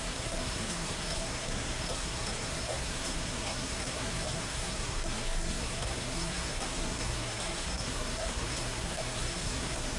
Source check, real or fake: fake